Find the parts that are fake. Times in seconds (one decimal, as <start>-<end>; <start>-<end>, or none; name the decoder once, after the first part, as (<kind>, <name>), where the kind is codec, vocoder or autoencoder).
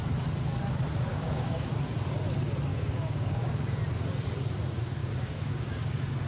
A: 1.1-1.7 (codec, DAC); 2.7-3.5; 5.0-5.6